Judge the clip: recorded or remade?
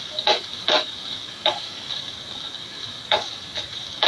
remade